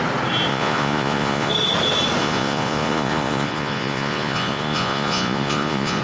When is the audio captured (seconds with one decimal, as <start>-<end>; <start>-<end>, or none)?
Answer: 0.0-0.5; 1.5-2.2